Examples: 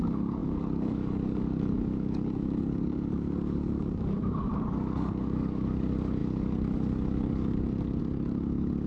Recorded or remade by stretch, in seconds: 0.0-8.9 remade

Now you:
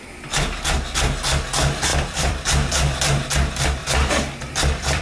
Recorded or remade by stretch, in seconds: 0.0-1.9 recorded; 1.9-2.7 remade; 2.7-3.8 recorded; 3.8-5.0 remade

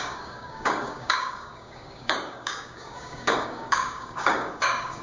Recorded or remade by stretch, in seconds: 0.0-5.0 remade